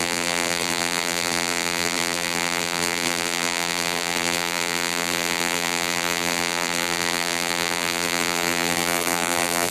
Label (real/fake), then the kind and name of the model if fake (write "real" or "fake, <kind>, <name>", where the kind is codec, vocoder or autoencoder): fake, vocoder, BigVGAN v2